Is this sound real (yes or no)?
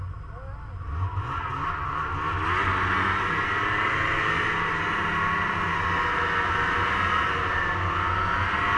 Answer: yes